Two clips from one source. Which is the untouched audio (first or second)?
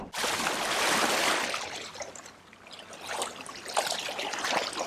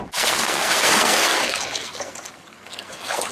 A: first